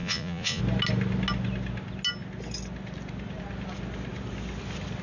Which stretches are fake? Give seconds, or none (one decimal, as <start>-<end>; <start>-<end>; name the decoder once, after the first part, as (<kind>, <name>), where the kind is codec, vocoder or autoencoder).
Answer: 0.0-0.6 (vocoder, Vocos)